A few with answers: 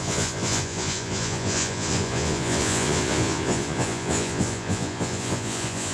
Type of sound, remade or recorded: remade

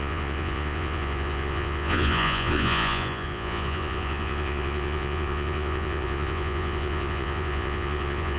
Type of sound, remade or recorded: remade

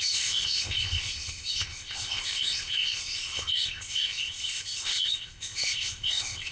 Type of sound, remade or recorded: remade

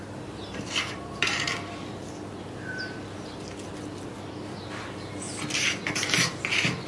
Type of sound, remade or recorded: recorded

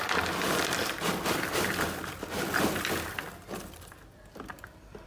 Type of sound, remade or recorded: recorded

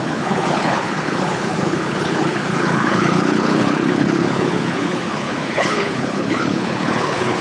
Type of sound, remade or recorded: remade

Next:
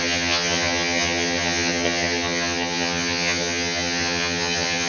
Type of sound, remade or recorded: remade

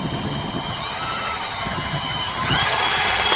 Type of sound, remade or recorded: remade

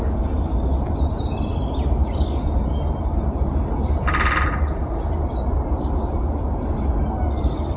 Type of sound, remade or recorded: recorded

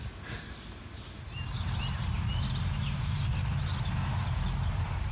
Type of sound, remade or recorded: recorded